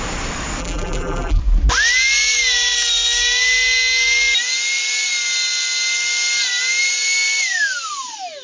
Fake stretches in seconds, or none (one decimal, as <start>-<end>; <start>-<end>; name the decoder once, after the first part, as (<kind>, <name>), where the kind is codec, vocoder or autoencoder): 0.6-1.4 (vocoder, BigVGAN v2)